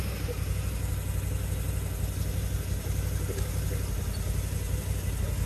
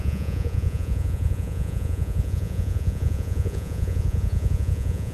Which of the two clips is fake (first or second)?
second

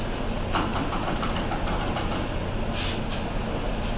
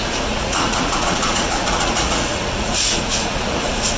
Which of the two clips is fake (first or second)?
second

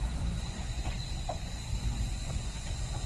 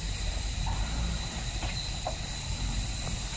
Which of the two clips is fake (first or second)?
first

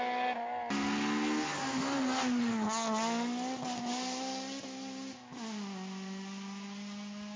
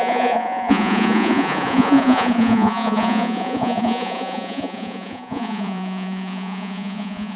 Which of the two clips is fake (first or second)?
second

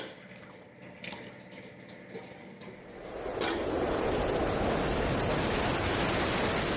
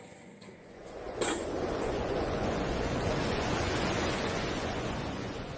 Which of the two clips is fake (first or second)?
second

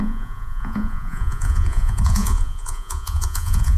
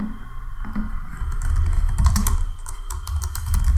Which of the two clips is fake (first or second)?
first